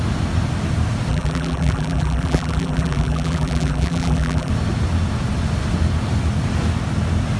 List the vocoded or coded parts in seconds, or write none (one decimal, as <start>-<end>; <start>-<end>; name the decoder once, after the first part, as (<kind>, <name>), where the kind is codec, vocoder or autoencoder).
1.1-4.5 (vocoder, BigVGAN v2)